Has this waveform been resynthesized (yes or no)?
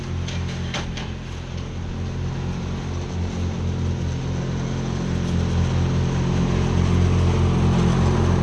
no